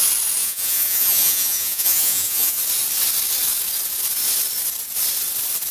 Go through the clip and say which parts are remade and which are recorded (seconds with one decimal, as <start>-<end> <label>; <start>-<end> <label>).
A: 0.0-0.4 recorded; 0.4-2.6 remade; 2.6-5.7 recorded